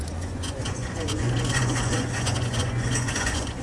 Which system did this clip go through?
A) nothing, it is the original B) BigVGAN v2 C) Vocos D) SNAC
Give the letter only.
C